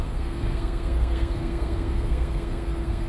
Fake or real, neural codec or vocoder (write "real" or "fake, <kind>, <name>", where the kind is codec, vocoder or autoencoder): fake, codec, SNAC